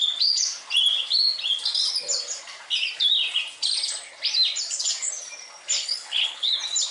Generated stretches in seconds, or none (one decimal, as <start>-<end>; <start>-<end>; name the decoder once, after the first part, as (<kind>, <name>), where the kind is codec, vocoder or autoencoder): 5.8-6.5 (codec, HILCodec)